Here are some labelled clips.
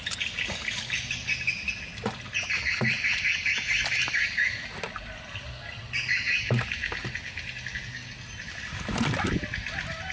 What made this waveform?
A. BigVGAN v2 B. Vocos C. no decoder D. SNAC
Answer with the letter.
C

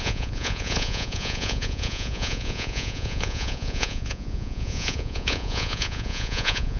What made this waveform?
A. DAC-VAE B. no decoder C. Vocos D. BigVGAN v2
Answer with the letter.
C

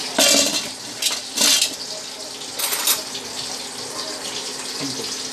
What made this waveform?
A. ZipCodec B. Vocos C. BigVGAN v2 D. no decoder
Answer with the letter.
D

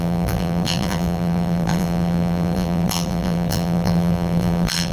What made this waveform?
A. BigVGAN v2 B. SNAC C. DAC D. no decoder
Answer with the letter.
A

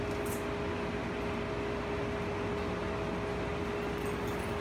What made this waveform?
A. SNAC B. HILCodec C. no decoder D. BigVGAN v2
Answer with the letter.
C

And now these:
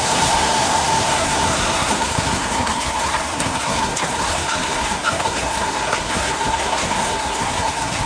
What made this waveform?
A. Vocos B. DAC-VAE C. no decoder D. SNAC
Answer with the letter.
D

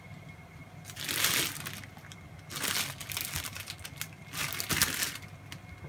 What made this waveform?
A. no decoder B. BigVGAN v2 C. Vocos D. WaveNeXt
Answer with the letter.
A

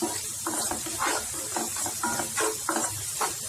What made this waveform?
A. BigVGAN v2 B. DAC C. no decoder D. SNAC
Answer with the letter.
C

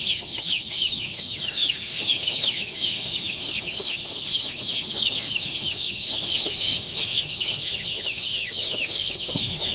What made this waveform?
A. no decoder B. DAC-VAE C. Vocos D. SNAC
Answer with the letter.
B